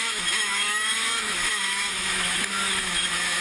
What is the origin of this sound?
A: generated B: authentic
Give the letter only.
A